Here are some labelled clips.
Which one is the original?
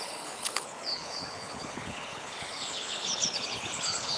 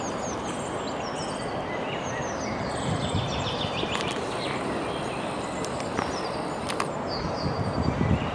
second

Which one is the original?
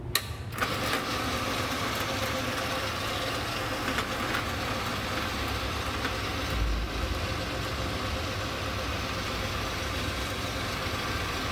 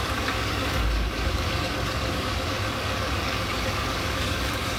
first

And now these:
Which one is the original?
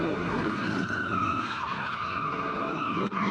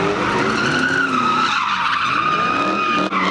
second